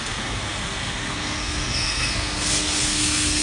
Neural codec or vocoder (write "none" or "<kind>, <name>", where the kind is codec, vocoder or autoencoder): codec, SNAC